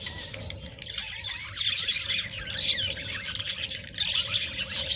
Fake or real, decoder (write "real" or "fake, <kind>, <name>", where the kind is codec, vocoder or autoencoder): real